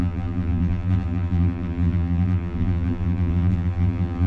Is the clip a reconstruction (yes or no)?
yes